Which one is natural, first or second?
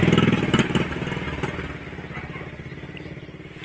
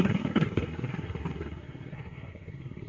first